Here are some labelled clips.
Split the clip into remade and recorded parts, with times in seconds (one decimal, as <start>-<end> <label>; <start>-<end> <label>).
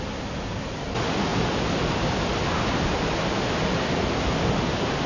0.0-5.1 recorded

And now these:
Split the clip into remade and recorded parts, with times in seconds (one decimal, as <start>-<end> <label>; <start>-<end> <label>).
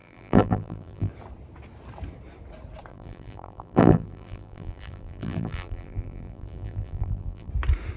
0.0-1.1 remade; 1.1-2.9 recorded; 2.9-7.5 remade; 7.5-8.0 recorded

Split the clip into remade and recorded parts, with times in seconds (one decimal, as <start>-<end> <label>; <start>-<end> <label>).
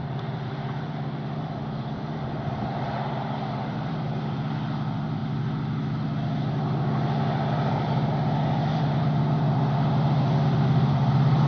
0.0-5.2 remade; 5.2-7.7 recorded; 7.7-11.5 remade